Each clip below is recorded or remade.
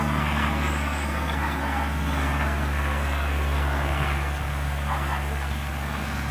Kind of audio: remade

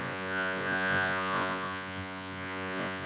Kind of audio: remade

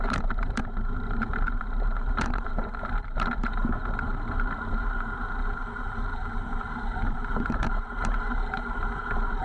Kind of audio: remade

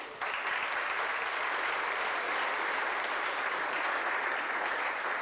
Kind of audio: recorded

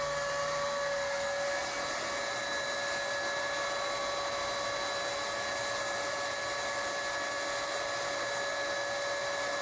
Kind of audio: recorded